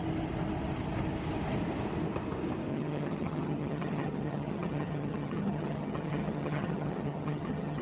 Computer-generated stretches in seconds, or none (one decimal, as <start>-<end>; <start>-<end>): 2.7-7.8